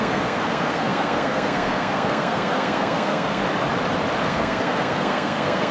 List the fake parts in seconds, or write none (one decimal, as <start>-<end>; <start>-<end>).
0.0-3.4; 4.2-5.7